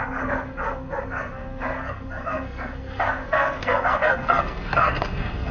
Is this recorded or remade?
remade